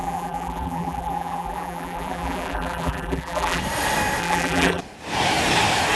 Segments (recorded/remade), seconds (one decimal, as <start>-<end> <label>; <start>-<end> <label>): 0.0-3.6 remade; 3.6-4.2 recorded; 4.2-4.8 remade; 4.8-6.0 recorded